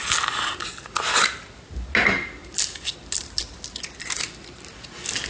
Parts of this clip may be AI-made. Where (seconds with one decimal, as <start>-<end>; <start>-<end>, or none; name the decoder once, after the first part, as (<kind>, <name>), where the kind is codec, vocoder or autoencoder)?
none